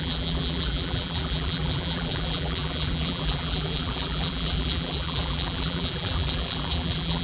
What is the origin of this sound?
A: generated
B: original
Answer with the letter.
A